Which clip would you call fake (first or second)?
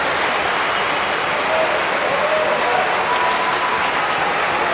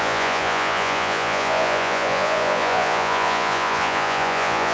second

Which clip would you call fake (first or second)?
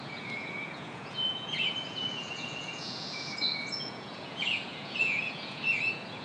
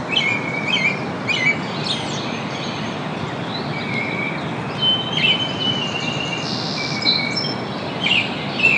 first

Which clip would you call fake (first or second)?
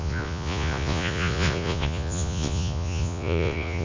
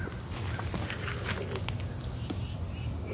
first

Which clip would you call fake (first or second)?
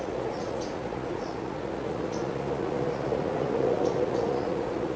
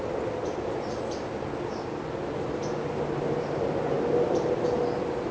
first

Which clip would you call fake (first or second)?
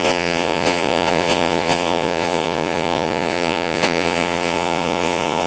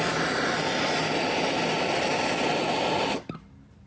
first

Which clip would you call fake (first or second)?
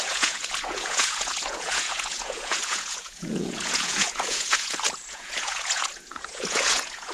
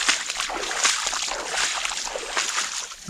first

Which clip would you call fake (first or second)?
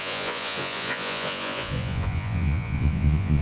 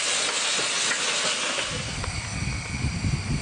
first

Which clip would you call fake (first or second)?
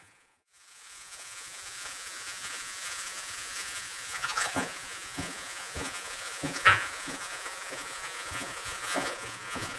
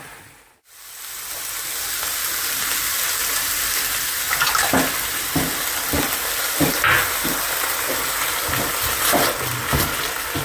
first